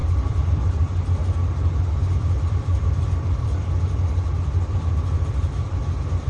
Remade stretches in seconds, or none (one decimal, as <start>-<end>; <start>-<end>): 0.0-0.8; 2.0-5.8

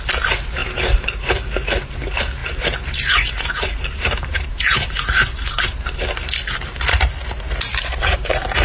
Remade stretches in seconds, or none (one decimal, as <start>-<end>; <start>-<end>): 0.6-1.2; 2.4-6.0; 7.7-8.6

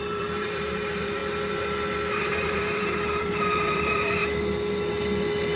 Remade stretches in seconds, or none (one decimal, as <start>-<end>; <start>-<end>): 0.0-1.2; 2.2-4.2

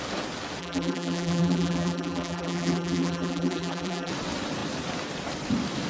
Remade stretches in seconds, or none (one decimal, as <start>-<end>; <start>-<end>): 0.6-4.1

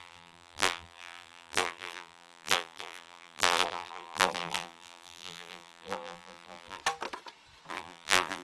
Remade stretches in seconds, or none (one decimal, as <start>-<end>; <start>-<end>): 0.0-6.8; 7.7-8.4

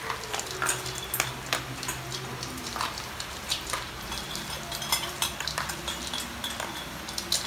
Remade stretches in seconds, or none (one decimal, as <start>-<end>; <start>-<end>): 2.7-5.7

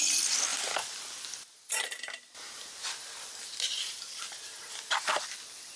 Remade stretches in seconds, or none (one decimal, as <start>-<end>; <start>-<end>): 0.5-1.8; 3.0-5.8